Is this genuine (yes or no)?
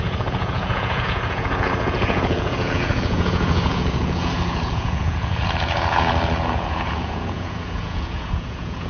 no